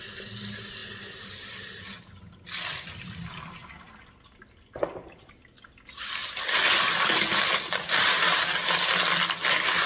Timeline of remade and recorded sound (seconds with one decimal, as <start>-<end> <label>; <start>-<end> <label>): 0.0-9.9 recorded